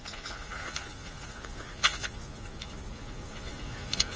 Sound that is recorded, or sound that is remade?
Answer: remade